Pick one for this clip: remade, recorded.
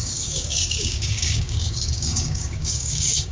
remade